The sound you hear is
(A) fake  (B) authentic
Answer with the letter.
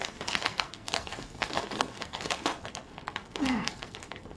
A